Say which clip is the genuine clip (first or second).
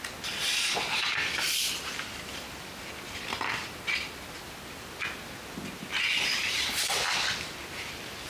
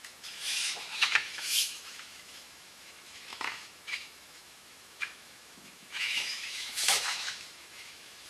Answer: first